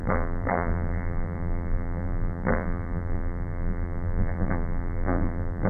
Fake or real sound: fake